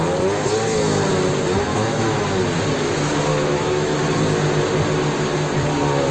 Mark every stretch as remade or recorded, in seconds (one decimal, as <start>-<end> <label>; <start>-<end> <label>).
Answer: 0.0-1.7 recorded; 1.7-2.2 remade; 2.2-3.3 recorded; 3.3-4.0 remade; 4.0-6.1 recorded